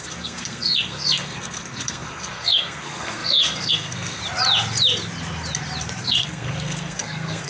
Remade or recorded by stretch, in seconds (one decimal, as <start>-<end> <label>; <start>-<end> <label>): 0.0-4.2 remade; 4.2-6.0 recorded; 6.0-7.5 remade